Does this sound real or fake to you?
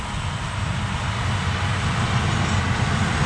real